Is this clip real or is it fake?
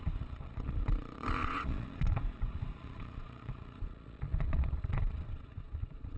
fake